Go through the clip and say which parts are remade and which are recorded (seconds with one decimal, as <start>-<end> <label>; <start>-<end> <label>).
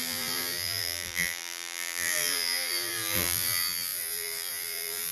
0.0-5.1 remade